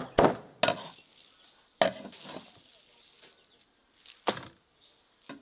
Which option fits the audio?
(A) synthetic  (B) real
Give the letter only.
B